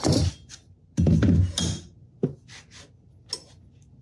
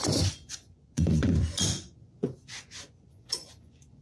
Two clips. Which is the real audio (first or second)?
first